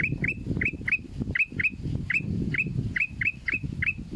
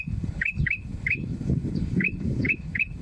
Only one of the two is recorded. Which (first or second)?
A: first